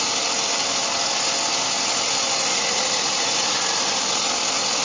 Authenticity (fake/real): real